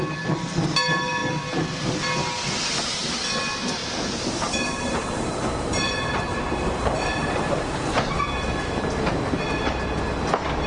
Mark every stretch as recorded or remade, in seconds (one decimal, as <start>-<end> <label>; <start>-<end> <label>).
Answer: 0.0-3.8 recorded; 3.8-8.2 remade; 8.2-10.7 recorded